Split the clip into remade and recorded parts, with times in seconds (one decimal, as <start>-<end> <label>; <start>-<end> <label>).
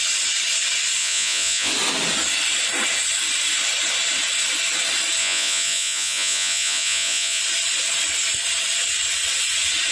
0.0-1.0 recorded; 1.0-1.7 remade; 1.7-5.2 recorded; 5.2-7.4 remade; 7.4-9.9 recorded